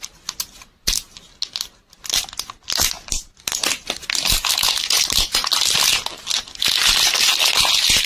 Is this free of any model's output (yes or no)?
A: yes